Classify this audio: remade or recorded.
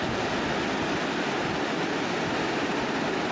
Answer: recorded